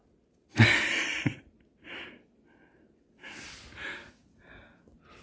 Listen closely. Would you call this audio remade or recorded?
recorded